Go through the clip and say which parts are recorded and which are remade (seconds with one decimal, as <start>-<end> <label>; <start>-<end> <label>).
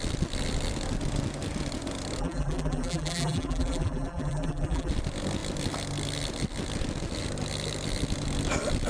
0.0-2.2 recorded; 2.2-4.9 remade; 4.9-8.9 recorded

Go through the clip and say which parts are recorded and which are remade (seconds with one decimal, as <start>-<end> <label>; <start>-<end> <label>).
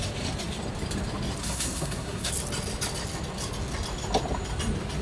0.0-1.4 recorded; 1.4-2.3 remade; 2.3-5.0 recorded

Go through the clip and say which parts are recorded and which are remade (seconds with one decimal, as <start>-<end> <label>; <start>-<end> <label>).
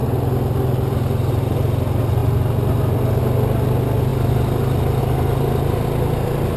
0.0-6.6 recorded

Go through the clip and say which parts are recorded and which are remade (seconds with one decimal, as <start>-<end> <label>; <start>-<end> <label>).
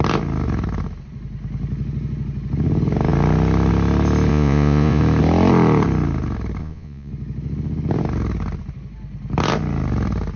0.0-4.3 recorded; 4.3-5.0 remade; 5.0-6.6 recorded; 6.6-7.1 remade; 7.1-10.4 recorded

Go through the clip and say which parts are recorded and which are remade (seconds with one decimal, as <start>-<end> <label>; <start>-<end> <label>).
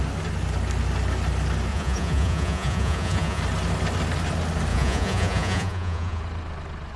0.0-1.7 recorded; 1.7-3.4 remade; 3.4-4.7 recorded; 4.7-6.2 remade; 6.2-7.0 recorded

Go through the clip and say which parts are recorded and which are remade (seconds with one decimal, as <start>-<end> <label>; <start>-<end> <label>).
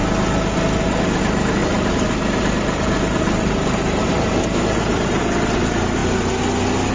0.0-1.6 recorded; 1.6-5.2 remade; 5.2-6.9 recorded